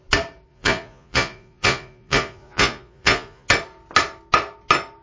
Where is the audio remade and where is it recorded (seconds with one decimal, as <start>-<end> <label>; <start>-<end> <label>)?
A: 0.0-0.5 recorded; 0.5-3.5 remade; 3.5-5.0 recorded